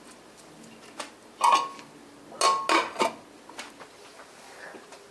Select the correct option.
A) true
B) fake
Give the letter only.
A